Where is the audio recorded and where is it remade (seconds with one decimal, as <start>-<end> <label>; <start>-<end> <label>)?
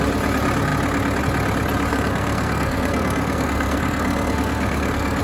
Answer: 0.0-1.9 recorded; 1.9-5.2 remade